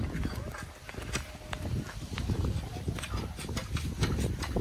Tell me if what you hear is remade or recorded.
recorded